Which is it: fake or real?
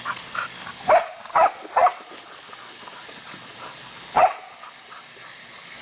real